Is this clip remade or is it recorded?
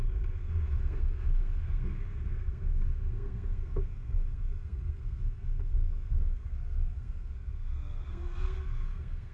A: remade